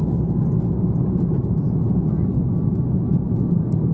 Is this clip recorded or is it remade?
recorded